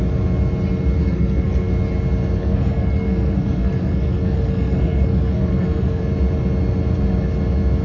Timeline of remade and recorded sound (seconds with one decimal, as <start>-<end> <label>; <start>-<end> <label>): 0.0-1.0 recorded; 1.0-1.7 remade; 1.7-2.4 recorded; 2.4-6.0 remade; 6.0-7.8 recorded